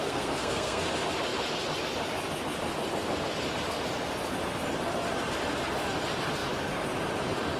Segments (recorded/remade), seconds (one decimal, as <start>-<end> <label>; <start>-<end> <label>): 0.0-0.9 remade; 0.9-7.6 recorded